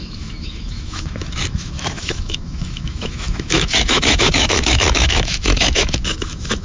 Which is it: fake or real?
fake